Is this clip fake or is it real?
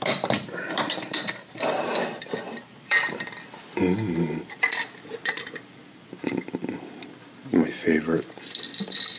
fake